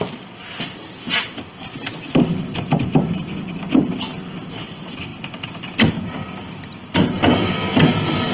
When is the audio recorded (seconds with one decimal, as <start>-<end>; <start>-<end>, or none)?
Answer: 0.0-8.3